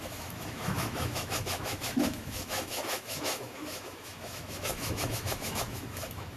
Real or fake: fake